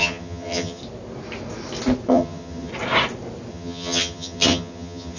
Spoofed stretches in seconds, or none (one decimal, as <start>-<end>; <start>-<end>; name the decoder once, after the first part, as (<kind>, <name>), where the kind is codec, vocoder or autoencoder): 0.0-0.8 (vocoder, HiFi-GAN); 2.1-2.7; 3.5-5.2